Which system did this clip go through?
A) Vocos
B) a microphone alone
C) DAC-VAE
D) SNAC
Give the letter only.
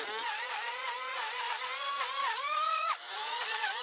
A